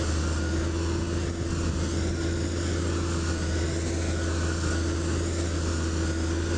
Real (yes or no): yes